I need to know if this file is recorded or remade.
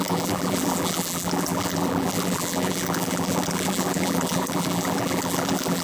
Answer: remade